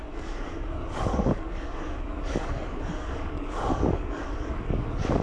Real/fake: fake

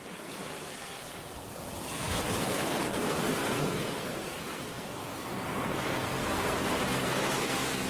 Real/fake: fake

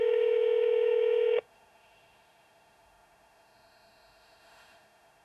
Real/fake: fake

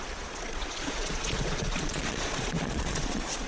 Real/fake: fake